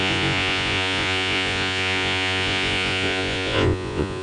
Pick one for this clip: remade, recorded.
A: remade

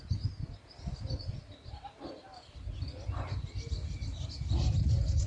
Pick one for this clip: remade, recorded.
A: recorded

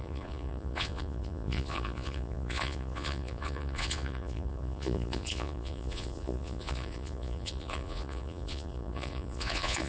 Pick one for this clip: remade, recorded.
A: remade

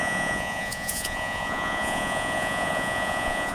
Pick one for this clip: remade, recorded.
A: remade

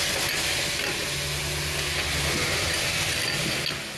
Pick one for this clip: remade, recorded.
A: recorded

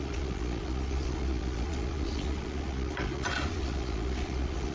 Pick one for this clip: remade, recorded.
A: remade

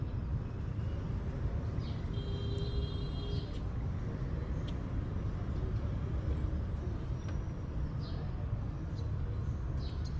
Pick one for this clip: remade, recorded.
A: recorded